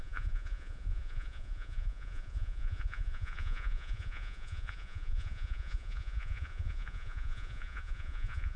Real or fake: fake